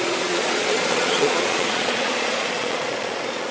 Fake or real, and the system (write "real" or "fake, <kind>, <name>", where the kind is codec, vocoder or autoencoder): fake, vocoder, Vocos